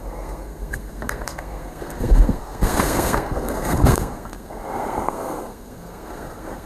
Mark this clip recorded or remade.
remade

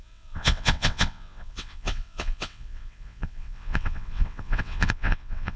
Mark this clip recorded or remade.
remade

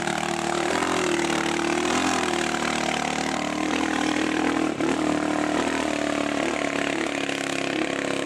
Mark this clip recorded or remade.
remade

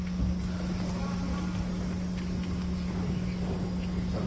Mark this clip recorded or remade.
recorded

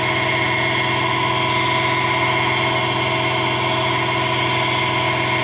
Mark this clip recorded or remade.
recorded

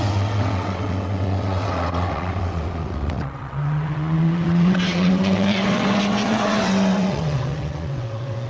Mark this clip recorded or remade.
remade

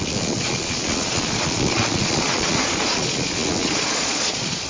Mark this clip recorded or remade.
remade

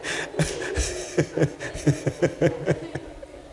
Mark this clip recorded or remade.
recorded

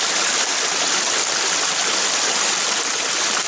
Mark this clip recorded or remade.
recorded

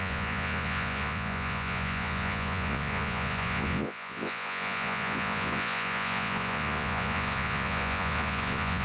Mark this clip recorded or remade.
remade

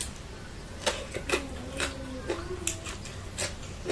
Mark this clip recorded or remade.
recorded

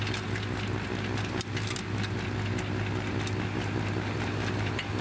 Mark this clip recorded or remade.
recorded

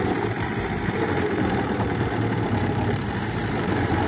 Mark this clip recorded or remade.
remade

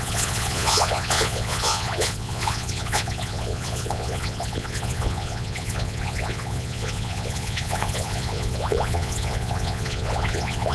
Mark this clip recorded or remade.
remade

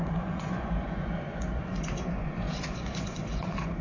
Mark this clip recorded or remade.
remade